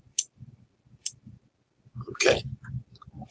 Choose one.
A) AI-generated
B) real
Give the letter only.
B